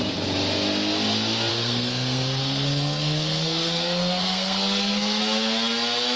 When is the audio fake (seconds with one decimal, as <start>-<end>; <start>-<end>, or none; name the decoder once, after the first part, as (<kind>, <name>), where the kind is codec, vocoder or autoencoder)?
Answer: 1.5-5.2 (codec, SNAC)